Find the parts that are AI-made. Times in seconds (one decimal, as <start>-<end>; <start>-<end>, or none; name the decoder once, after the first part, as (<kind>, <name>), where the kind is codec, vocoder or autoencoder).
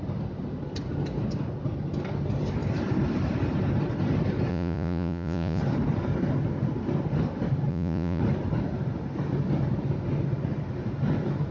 4.5-5.6 (vocoder, Vocos); 7.7-8.2